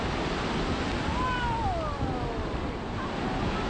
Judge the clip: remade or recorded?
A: recorded